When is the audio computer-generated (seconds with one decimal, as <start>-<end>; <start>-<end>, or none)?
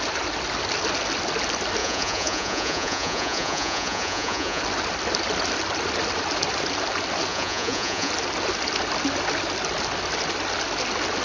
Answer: 1.8-4.6; 7.3-8.1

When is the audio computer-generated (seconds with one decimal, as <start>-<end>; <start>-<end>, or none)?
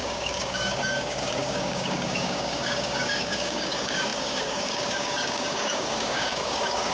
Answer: 0.0-6.9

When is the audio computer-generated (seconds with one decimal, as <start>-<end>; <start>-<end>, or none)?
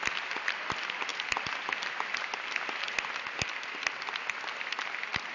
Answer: none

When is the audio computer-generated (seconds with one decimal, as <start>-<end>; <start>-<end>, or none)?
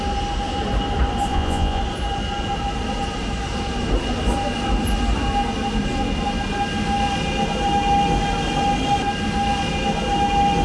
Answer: 1.3-1.8